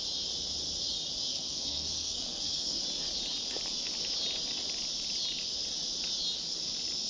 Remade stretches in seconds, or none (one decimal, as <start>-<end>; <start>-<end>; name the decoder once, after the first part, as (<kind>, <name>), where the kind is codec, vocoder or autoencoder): 1.3-2.8 (codec, SNAC)